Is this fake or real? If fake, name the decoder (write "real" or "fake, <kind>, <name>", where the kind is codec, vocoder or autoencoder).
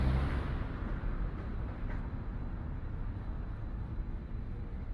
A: real